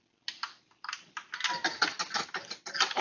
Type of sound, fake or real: real